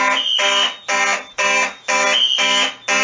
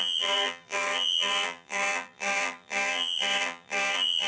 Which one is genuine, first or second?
first